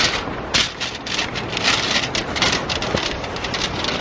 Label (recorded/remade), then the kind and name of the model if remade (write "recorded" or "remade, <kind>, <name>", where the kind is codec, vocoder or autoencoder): recorded